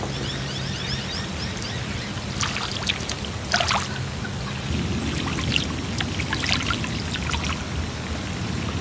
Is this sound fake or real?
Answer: real